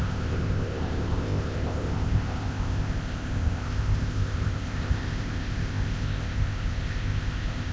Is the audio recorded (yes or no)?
no